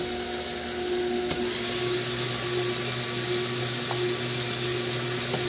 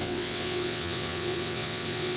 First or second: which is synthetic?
second